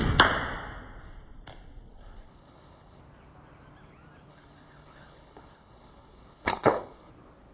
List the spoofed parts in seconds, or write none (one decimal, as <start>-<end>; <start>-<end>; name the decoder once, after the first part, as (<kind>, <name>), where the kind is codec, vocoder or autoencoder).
1.9-3.0 (codec, HILCodec); 4.3-7.1